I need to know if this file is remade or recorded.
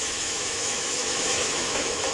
remade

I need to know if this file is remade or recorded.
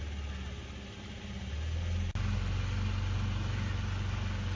recorded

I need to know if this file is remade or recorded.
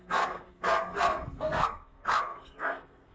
remade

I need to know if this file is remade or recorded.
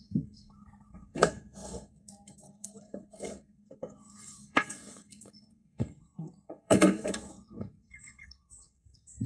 remade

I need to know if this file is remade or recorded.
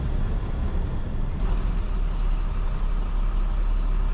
recorded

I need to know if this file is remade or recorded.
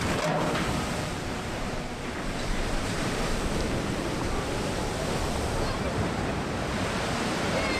remade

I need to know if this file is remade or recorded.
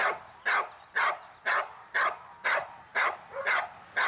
recorded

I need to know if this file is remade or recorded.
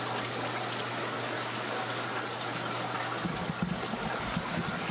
recorded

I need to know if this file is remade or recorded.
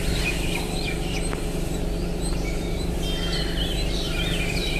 remade